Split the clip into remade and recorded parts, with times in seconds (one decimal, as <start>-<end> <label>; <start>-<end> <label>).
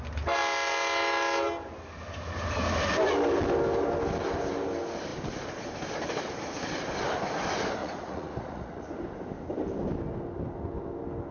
0.0-7.8 recorded; 7.8-8.9 remade; 8.9-11.3 recorded